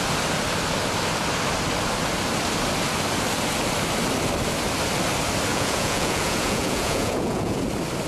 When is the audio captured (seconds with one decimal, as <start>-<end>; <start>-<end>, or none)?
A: 0.0-5.5; 7.6-8.1